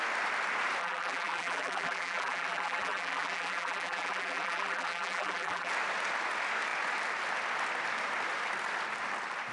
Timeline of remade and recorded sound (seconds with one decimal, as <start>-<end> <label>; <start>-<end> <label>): 0.0-0.8 recorded; 0.8-5.7 remade; 5.7-9.5 recorded